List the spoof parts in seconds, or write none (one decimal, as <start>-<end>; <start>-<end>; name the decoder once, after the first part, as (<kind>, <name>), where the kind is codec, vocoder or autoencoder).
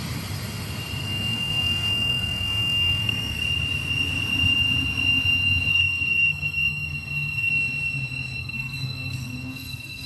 1.0-3.4 (codec, SNAC); 5.7-7.5; 8.4-10.1